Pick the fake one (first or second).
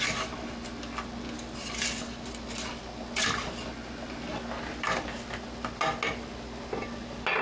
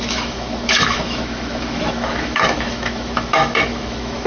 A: second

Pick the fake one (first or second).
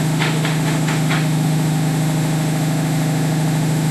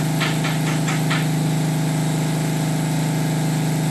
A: first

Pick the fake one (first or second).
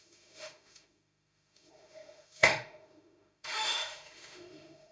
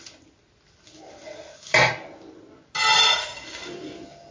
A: first